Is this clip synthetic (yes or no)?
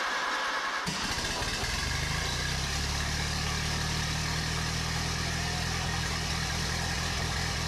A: no